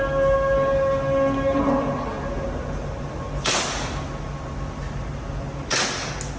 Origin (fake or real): real